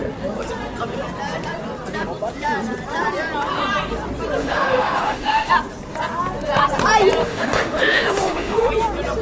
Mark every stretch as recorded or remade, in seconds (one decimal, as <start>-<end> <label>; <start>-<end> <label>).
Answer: 0.0-4.4 recorded; 4.4-5.5 remade; 5.5-7.2 recorded; 7.2-8.7 remade; 8.7-9.2 recorded